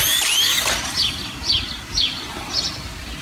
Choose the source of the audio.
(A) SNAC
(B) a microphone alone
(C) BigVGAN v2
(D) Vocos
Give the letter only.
B